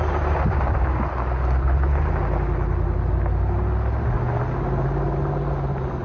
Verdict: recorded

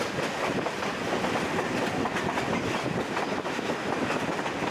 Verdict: recorded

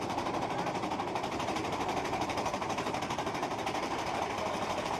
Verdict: remade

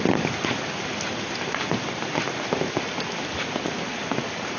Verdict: recorded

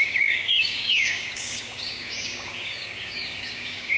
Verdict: remade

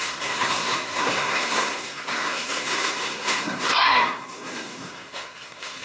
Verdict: remade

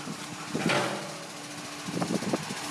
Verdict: recorded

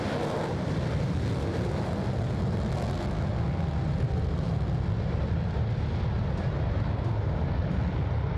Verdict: recorded